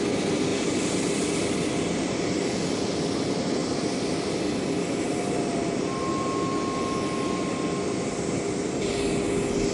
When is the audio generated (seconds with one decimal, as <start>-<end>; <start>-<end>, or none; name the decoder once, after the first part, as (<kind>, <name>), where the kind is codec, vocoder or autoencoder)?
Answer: 3.6-4.1 (vocoder, BigVGAN v2)